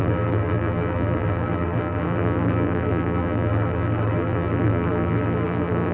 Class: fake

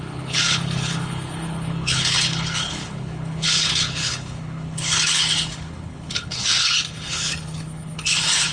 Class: fake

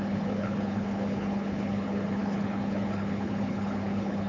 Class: fake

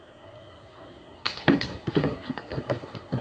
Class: fake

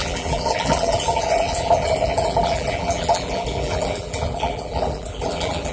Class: fake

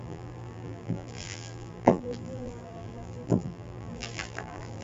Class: fake